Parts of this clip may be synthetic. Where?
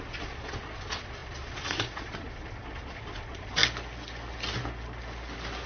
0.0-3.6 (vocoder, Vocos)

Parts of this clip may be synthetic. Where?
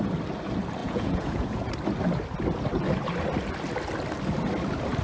0.8-1.7 (vocoder, Vocos)